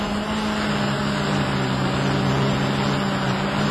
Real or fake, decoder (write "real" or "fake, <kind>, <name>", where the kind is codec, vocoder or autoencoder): real